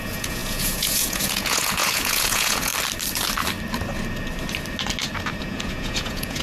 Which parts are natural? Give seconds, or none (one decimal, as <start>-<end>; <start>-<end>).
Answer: 2.7-5.4